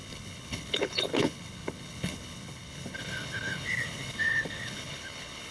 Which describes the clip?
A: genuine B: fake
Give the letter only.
B